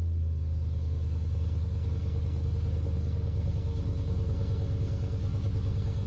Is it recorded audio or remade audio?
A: remade